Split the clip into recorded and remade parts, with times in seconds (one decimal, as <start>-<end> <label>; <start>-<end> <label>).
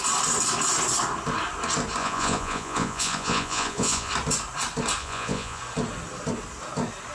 0.0-2.0 recorded; 2.0-4.1 remade; 4.1-5.0 recorded; 5.0-5.6 remade; 5.6-7.1 recorded